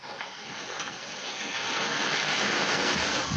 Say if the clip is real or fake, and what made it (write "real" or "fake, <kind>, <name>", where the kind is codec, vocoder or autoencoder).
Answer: fake, codec, SNAC